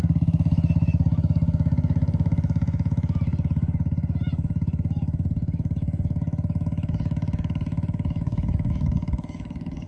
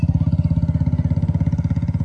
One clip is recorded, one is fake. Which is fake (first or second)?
first